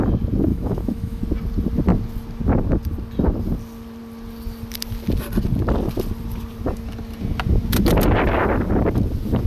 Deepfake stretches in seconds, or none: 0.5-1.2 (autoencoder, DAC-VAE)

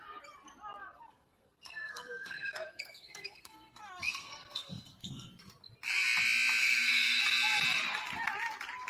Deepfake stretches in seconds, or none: 0.8-5.3 (codec, SNAC); 6.6-7.2

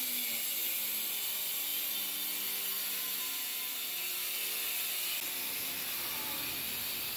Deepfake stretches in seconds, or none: none

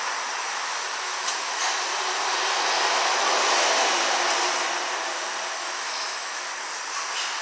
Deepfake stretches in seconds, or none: 0.5-1.6 (autoencoder, DAC-VAE); 3.0-3.5; 5.6-6.5

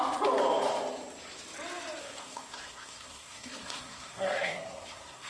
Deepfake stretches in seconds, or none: 2.0-5.3 (codec, SNAC)

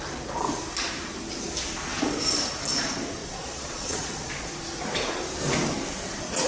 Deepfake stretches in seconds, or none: 3.2-4.6 (vocoder, Vocos)